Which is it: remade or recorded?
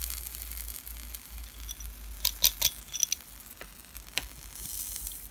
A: recorded